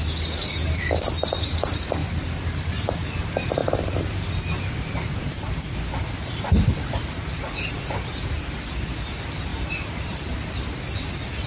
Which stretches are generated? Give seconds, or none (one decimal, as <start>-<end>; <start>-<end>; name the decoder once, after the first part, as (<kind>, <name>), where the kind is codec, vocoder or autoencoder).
2.0-3.1 (vocoder, BigVGAN v2); 3.6-7.5; 9.5-10.6